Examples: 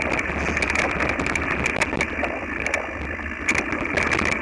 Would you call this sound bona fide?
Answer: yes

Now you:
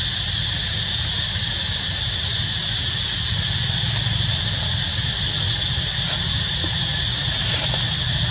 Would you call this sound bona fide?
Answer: yes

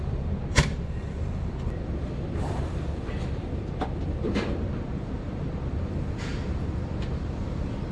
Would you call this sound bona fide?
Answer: no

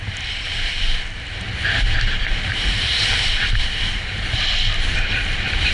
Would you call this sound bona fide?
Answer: no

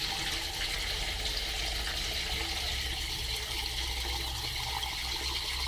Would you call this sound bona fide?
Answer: yes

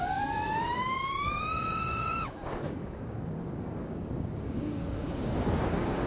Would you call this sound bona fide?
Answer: no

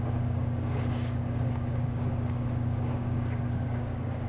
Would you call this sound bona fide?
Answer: no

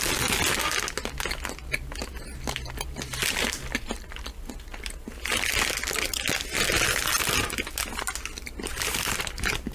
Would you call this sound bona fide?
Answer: yes